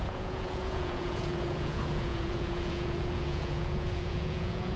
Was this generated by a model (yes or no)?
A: yes